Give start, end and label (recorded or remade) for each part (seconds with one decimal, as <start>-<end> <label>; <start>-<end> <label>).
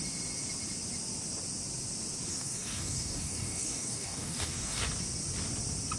0.0-2.3 recorded; 2.3-4.8 remade; 4.8-6.0 recorded